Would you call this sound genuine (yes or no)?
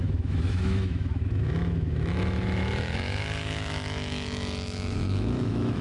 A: no